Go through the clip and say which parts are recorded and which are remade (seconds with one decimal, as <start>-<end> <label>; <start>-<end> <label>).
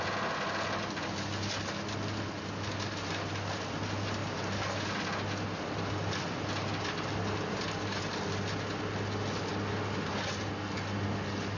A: 0.0-11.6 recorded